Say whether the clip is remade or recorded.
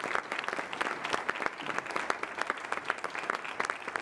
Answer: recorded